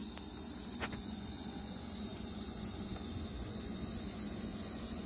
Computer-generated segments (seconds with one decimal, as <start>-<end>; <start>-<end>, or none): 0.7-5.1